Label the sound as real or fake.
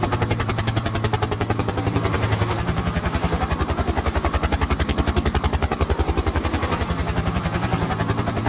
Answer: fake